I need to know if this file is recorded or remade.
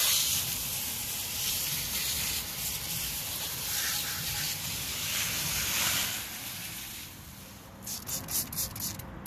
recorded